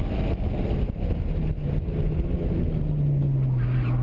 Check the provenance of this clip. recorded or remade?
recorded